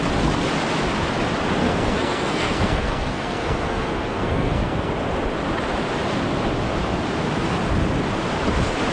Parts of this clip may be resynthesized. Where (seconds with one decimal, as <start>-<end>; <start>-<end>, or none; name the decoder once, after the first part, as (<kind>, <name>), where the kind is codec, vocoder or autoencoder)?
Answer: 1.6-4.9 (codec, SNAC)